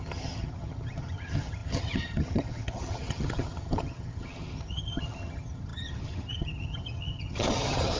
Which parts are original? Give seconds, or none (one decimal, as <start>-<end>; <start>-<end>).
none